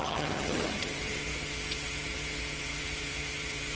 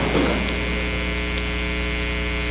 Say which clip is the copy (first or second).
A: first